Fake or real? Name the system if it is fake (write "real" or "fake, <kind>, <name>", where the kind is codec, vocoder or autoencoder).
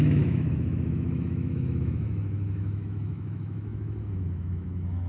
fake, autoencoder, DAC-VAE